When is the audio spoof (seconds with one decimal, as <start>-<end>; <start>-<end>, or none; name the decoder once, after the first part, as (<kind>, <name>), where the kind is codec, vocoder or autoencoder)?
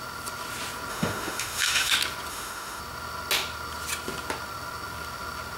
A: 0.9-1.9 (autoencoder, DAC-VAE); 2.3-2.8